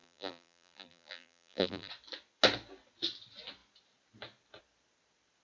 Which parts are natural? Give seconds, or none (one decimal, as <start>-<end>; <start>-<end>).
1.9-5.4